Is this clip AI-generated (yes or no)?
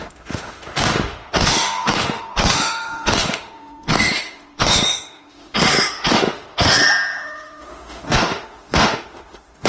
yes